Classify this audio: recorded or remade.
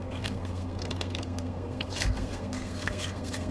remade